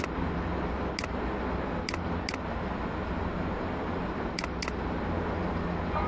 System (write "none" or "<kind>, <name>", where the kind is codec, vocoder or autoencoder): none